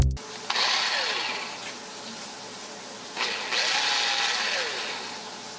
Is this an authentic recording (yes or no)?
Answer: yes